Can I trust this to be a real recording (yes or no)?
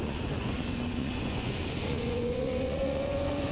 no